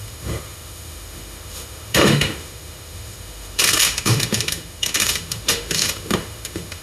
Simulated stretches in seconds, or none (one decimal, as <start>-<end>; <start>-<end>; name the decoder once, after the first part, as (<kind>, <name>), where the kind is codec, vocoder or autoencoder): 0.0-6.8 (autoencoder, DAC-VAE)